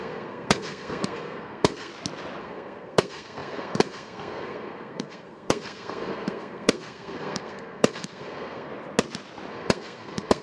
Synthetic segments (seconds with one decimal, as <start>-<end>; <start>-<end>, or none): 0.0-1.9; 2.4-8.7; 9.5-10.4